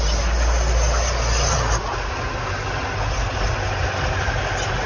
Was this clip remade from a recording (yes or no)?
no